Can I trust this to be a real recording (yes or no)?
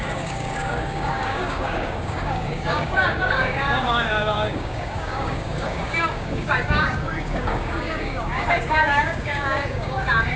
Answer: no